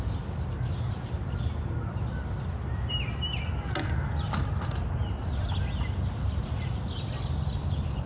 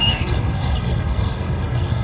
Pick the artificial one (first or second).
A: second